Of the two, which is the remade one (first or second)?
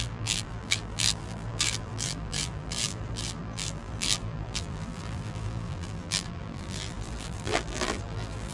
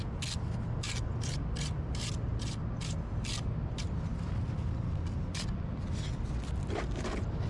first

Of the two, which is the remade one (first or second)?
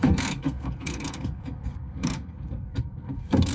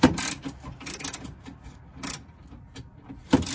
first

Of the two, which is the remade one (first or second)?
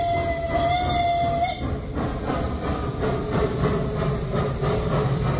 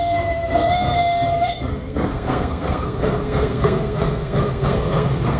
second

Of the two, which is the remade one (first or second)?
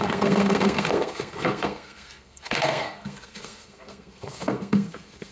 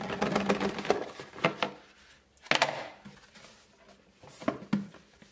first